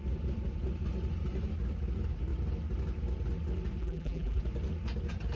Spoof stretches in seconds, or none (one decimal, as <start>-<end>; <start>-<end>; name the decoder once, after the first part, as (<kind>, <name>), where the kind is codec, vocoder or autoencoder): 3.8-4.4 (vocoder, BigVGAN v2)